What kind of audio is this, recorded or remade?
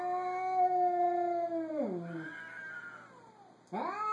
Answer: recorded